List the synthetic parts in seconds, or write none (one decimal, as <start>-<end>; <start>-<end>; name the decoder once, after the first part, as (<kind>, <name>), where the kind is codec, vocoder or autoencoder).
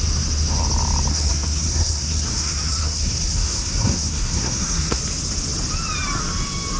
1.1-5.0 (codec, SNAC)